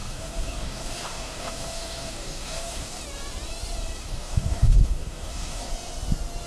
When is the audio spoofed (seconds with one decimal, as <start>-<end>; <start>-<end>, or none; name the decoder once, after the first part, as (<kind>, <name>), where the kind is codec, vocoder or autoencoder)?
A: 0.0-3.0 (codec, DAC); 4.0-5.7